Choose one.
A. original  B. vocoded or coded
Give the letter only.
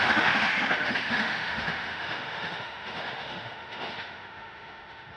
B